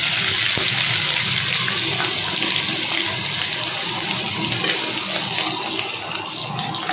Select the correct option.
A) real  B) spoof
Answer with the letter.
A